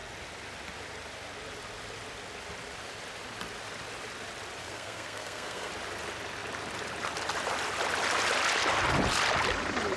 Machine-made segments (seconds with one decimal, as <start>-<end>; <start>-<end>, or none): 4.6-5.7